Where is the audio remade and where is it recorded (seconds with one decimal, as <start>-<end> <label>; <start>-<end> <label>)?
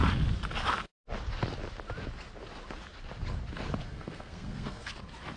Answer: 0.0-3.8 recorded; 3.8-4.9 remade; 4.9-5.4 recorded